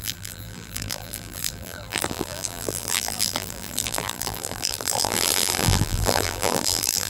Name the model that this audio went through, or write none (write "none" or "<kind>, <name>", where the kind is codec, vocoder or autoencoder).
vocoder, BigVGAN v2